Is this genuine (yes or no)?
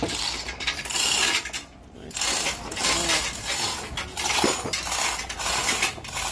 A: yes